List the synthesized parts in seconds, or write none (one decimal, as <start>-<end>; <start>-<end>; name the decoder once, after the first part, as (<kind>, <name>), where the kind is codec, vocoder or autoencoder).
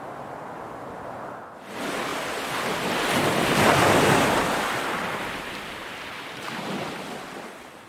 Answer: none